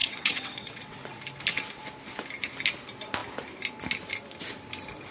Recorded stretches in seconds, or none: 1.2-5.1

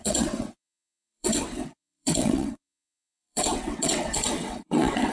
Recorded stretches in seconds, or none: none